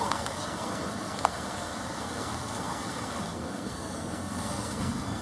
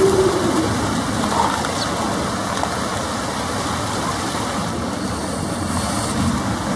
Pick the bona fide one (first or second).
second